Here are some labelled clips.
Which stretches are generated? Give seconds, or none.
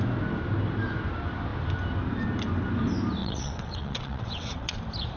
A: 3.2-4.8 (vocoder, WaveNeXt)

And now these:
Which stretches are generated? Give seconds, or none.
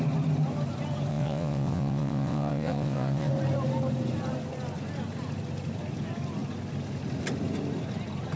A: 1.1-3.3 (vocoder, WaveNeXt)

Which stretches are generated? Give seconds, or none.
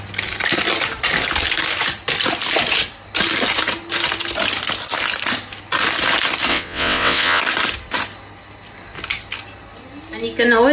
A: 6.5-7.4 (vocoder, WaveNeXt)